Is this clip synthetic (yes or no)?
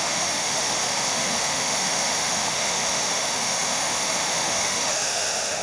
yes